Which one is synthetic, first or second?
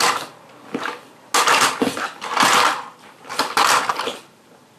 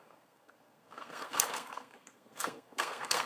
second